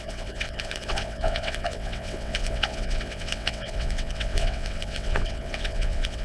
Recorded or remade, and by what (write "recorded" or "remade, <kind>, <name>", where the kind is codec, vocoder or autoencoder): remade, vocoder, WaveNeXt